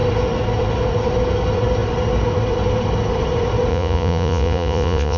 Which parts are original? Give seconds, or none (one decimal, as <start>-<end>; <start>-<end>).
0.0-3.7